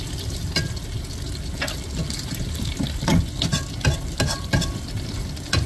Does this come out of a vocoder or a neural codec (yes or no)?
no